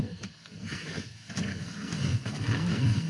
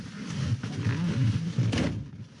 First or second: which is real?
second